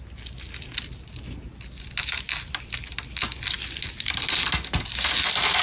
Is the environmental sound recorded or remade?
recorded